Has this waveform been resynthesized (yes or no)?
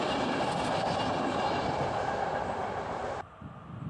no